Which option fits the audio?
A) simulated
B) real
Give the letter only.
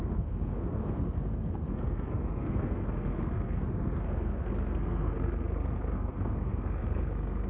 A